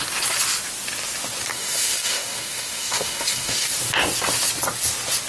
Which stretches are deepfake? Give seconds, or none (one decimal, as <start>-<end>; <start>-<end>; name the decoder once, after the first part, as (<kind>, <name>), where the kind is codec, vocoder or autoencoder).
1.5-3.7 (codec, DAC)